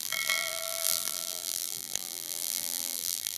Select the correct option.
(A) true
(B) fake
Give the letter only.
B